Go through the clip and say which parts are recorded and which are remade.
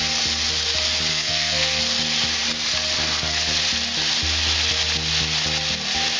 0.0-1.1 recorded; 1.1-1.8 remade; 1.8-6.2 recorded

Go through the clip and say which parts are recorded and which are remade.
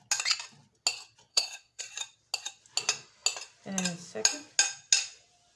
0.0-1.3 recorded; 1.3-1.8 remade; 1.8-5.6 recorded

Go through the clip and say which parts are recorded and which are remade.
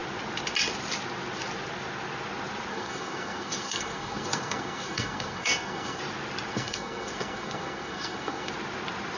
0.0-2.7 recorded; 2.7-6.0 remade; 6.0-6.5 recorded; 6.5-8.5 remade; 8.5-9.2 recorded